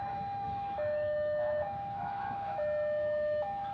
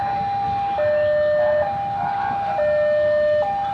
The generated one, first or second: first